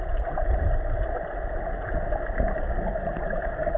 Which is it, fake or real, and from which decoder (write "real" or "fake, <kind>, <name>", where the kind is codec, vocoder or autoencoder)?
real